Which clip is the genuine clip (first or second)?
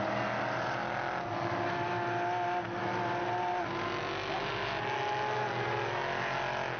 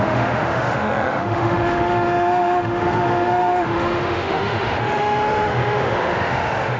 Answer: first